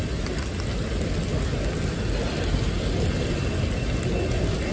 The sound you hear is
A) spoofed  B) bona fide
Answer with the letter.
B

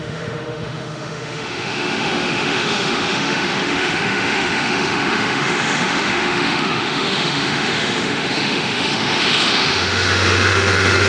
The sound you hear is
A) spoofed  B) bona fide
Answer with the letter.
A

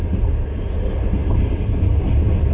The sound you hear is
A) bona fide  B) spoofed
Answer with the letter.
A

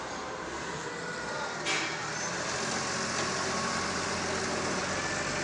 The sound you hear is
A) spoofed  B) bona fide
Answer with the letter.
B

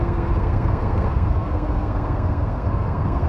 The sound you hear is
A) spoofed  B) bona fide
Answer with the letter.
A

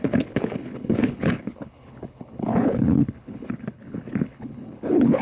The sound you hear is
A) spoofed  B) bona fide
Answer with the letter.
A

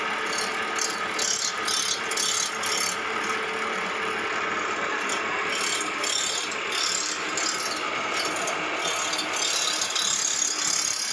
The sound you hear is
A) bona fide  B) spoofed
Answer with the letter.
A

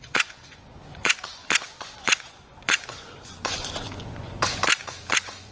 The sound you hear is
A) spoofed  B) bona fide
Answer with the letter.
A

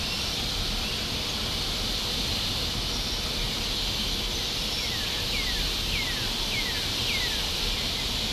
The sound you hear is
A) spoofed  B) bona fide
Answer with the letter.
B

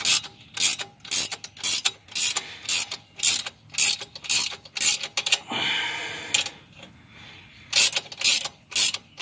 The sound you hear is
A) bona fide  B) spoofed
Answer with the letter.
A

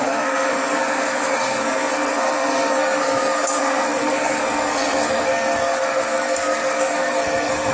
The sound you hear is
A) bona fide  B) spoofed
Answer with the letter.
B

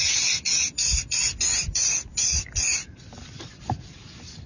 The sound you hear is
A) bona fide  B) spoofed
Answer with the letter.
A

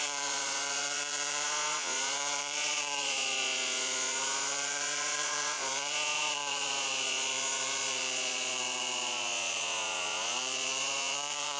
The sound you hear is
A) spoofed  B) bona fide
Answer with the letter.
A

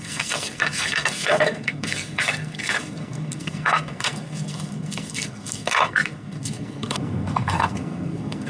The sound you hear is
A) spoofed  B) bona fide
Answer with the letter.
A